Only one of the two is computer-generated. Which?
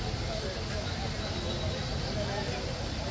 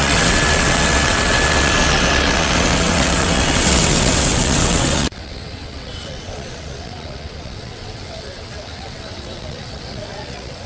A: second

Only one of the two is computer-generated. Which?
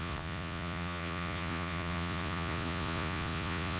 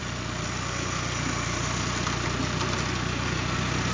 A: first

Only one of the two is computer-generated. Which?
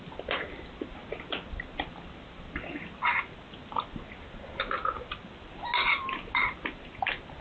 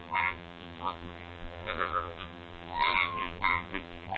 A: second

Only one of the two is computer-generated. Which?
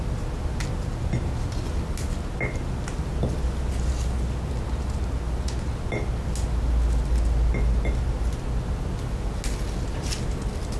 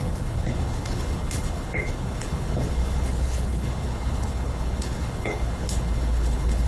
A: second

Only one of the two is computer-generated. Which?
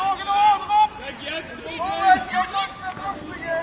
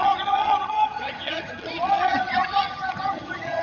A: second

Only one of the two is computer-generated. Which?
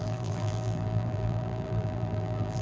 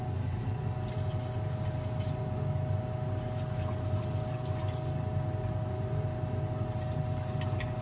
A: first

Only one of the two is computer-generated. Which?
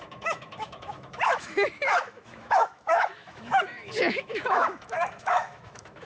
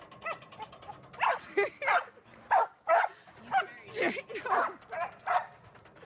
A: first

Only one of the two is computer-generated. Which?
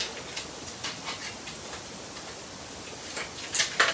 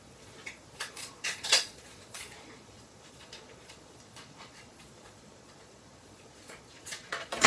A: second